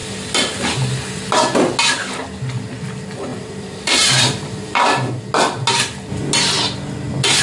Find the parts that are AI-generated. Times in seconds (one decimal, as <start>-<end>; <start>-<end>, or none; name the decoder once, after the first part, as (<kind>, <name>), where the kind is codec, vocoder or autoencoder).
3.3-5.3 (vocoder, BigVGAN v2)